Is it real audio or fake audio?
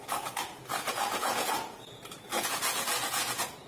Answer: fake